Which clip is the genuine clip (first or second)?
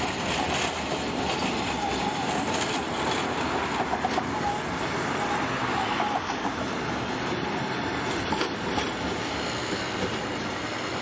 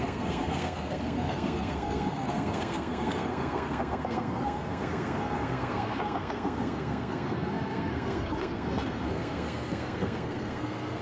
first